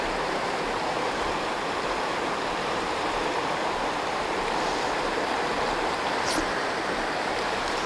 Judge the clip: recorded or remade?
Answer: remade